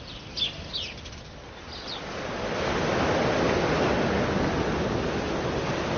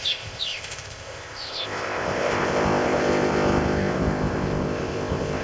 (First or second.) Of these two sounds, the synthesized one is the second